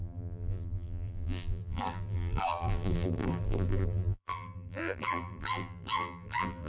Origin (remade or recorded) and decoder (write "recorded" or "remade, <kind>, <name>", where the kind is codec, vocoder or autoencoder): remade, vocoder, BigVGAN v2